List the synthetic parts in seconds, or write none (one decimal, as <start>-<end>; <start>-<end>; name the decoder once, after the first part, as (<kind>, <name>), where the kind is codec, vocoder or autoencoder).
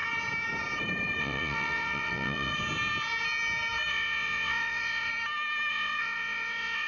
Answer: 1.2-2.5 (vocoder, WaveNeXt); 3.9-5.1; 5.7-6.9